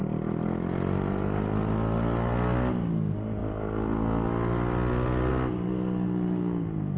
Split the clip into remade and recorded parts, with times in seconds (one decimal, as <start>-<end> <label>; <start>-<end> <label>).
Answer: 0.0-7.0 recorded